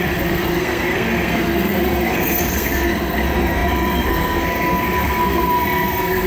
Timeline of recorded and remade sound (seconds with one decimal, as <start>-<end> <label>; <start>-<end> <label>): 0.0-6.3 remade